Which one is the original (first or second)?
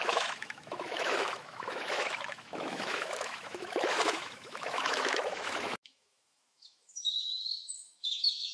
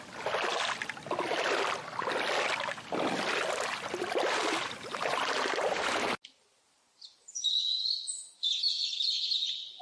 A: second